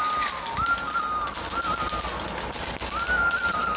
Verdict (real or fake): real